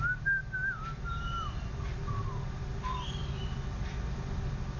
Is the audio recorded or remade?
recorded